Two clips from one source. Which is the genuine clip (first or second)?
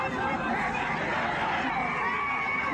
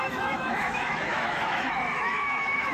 first